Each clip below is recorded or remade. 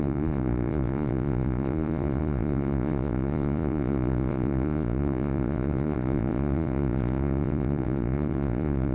remade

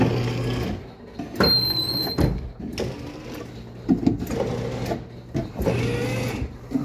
recorded